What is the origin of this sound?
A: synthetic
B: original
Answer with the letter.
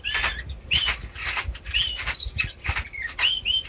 B